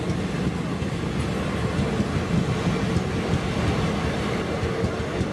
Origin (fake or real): real